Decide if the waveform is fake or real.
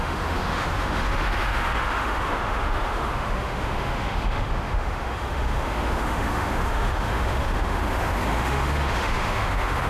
fake